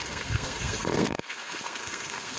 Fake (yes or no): yes